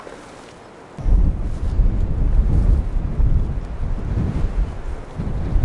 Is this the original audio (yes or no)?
yes